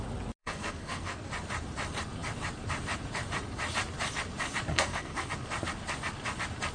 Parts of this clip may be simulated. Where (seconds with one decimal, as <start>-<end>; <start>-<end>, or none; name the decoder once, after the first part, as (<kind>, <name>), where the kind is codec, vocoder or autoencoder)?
0.4-1.3 (codec, SNAC); 4.7-5.3